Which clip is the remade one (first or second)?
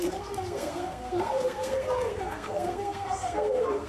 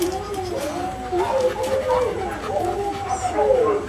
first